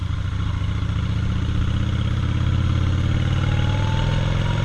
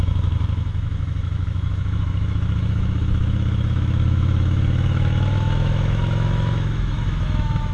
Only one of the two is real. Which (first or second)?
first